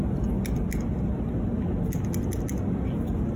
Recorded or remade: recorded